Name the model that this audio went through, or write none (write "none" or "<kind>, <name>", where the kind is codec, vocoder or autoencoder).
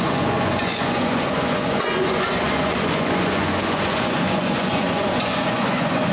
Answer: vocoder, Vocos